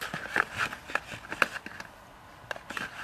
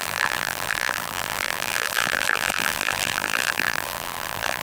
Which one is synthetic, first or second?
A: second